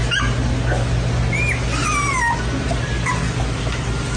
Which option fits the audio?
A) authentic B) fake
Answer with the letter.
A